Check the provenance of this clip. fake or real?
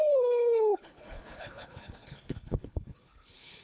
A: fake